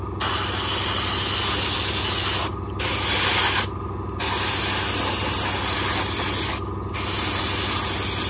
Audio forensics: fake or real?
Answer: real